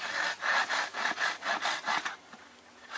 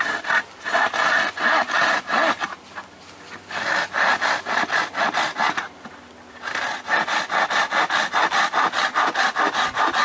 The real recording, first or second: second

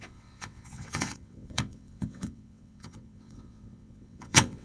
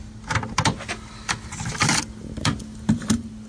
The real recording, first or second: second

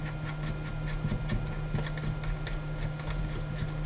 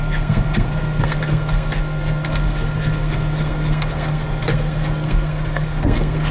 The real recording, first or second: first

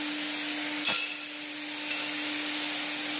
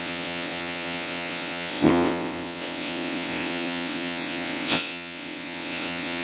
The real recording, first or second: first